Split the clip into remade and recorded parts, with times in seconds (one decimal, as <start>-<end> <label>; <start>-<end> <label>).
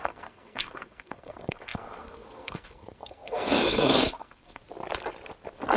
0.0-4.6 remade; 4.6-5.8 recorded